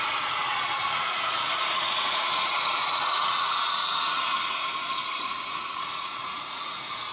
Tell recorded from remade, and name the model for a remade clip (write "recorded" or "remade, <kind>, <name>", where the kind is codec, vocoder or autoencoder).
remade, vocoder, Vocos